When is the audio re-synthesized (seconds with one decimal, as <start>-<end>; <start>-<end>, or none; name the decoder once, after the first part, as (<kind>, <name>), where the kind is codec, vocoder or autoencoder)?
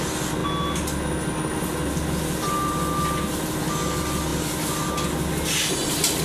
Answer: none